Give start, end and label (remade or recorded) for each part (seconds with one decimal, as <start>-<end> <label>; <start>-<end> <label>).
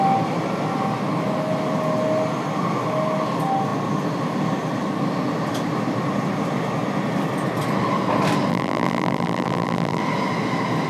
0.0-8.5 recorded; 8.5-10.0 remade; 10.0-10.9 recorded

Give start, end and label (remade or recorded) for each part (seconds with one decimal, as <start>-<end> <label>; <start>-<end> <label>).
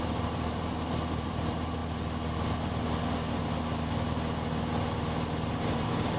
0.0-1.8 remade; 1.8-5.5 recorded; 5.5-6.2 remade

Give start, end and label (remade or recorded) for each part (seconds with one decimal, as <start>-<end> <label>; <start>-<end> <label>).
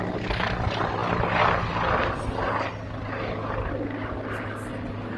0.0-5.2 recorded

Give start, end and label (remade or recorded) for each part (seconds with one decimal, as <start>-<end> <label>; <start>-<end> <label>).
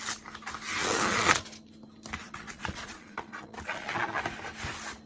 0.0-0.8 recorded; 0.8-1.4 remade; 1.4-2.2 recorded; 2.2-4.2 remade; 4.2-5.1 recorded